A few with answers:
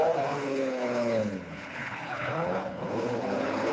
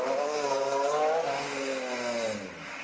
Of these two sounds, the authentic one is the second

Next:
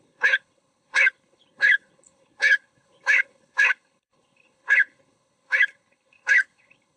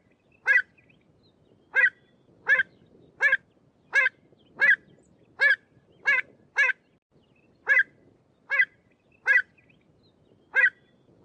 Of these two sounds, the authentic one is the second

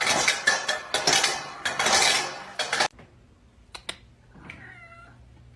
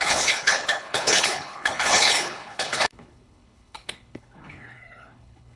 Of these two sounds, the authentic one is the first